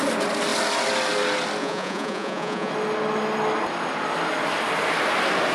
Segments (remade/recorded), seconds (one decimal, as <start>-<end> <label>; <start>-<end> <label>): 0.0-1.6 recorded; 1.6-2.7 remade; 2.7-5.5 recorded